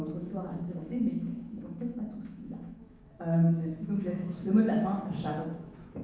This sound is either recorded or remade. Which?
remade